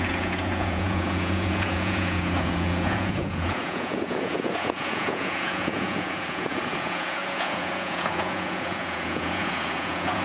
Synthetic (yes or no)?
yes